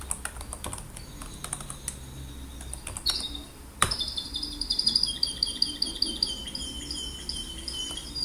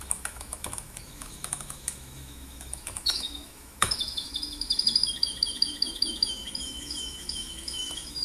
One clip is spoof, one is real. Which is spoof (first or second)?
second